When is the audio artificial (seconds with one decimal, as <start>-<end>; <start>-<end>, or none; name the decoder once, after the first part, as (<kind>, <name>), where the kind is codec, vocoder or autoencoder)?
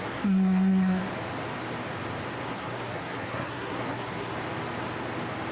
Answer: 0.0-1.0 (codec, SNAC); 2.4-4.3